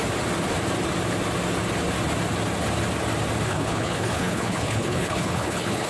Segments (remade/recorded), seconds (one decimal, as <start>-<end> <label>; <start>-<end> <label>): 0.0-3.5 recorded; 3.5-5.9 remade